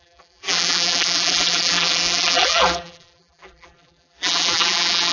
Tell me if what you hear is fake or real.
fake